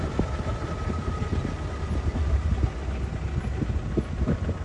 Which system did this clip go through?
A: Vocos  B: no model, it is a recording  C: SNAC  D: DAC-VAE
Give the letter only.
B